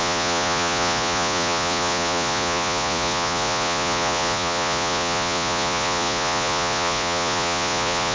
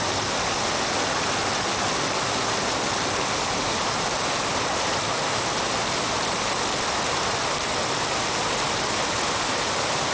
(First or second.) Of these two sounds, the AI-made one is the first